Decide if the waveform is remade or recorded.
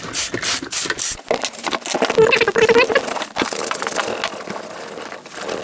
recorded